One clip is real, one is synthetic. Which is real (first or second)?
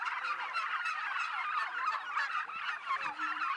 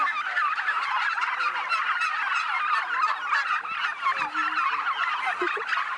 second